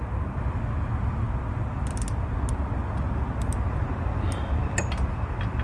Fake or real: real